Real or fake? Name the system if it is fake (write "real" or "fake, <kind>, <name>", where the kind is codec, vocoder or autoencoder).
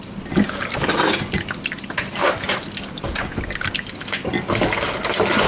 real